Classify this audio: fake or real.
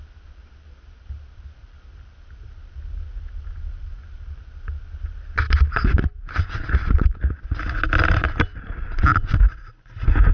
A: real